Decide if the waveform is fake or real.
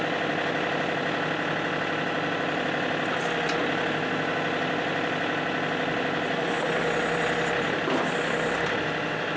real